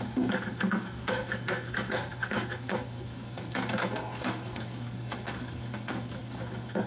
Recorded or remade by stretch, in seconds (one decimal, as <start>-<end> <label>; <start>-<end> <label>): 0.0-6.9 remade